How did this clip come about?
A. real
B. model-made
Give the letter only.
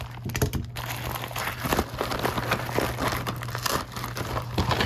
A